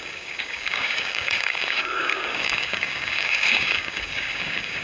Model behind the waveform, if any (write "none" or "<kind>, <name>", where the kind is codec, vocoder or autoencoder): codec, DAC